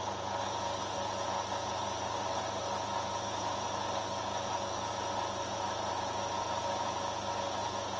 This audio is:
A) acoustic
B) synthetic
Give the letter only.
B